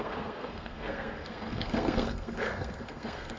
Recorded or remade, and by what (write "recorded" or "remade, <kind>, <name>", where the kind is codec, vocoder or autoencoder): remade, codec, SNAC